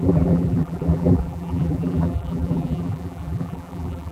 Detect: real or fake fake